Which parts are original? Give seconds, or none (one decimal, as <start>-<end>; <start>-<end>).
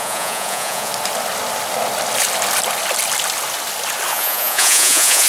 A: 0.9-4.1